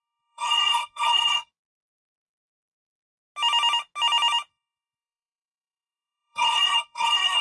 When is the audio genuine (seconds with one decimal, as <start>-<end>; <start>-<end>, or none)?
1.5-4.5